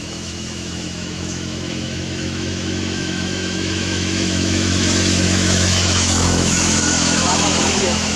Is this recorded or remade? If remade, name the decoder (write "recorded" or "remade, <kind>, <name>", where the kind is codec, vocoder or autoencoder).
remade, autoencoder, DAC-VAE